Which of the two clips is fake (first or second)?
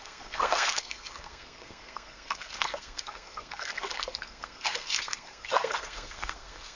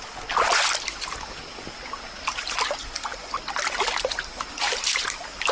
first